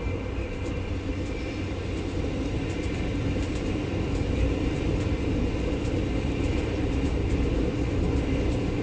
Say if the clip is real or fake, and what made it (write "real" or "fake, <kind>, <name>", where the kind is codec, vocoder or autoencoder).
real